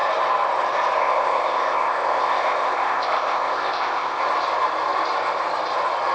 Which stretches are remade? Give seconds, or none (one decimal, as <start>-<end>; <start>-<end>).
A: 1.0-4.2